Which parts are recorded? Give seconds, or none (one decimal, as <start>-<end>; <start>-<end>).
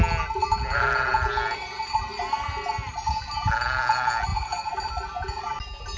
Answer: 0.0-4.3; 4.9-6.0